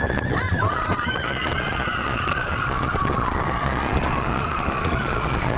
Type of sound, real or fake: fake